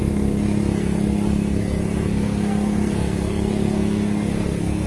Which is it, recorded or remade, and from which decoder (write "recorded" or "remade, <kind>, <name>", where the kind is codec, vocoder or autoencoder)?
remade, codec, SNAC